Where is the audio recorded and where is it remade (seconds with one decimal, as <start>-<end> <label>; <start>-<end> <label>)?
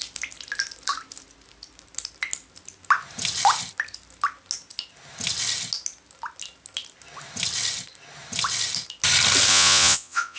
0.0-9.5 recorded; 9.5-10.4 remade